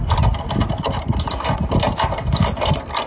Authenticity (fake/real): real